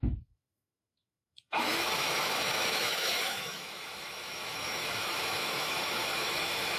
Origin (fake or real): fake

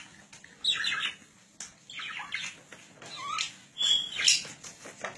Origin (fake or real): real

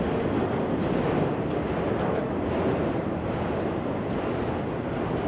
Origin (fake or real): real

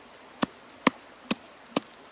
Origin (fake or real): real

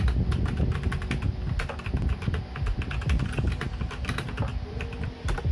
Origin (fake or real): real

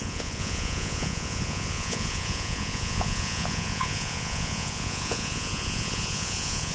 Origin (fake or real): fake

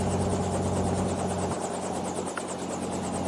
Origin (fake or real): real